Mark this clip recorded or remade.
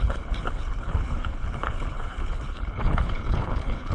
remade